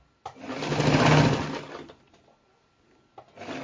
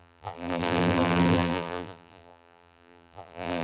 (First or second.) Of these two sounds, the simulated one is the second